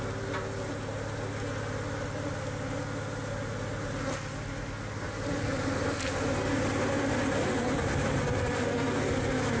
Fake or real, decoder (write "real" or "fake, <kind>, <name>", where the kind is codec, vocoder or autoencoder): real